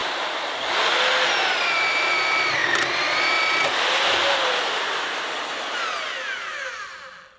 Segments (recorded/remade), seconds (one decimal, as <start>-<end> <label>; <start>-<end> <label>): 0.0-0.6 remade; 0.6-7.4 recorded